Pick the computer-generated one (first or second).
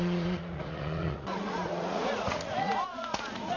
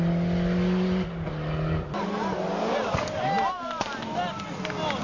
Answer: first